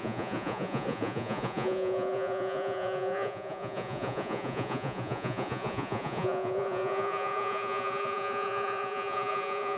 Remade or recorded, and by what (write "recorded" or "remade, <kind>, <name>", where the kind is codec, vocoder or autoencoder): remade, vocoder, Vocos